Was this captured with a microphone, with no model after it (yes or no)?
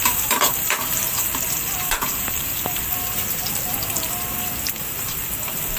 no